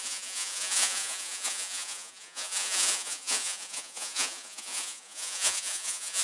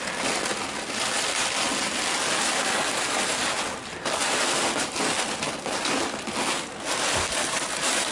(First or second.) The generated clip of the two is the first